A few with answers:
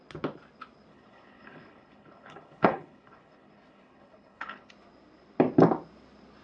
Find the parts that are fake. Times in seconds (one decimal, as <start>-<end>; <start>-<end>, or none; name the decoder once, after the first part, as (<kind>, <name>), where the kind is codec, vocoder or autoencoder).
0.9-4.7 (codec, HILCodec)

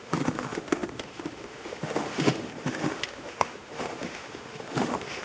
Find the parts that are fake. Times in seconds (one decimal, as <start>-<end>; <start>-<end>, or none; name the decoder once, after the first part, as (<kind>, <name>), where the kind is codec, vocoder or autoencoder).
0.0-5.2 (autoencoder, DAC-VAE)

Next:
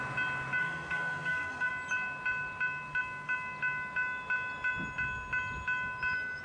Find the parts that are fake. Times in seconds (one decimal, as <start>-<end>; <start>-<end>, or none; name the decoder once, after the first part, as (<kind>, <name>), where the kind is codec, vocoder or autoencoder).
0.6-1.7 (codec, SNAC)